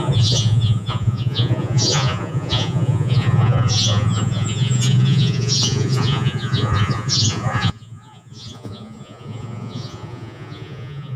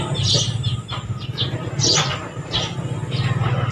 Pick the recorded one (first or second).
second